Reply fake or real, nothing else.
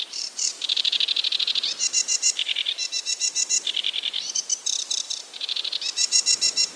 fake